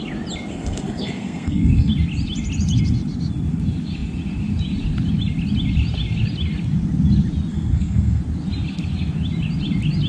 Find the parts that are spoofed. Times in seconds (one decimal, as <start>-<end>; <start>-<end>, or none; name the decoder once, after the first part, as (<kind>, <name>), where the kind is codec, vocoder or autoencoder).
0.5-1.9 (codec, SNAC); 7.5-8.2